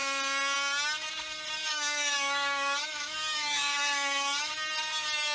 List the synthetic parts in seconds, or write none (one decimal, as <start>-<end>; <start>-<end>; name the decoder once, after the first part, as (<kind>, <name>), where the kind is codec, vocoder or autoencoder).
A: 1.6-4.5 (autoencoder, DAC-VAE)